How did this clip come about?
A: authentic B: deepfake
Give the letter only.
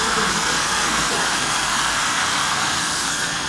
B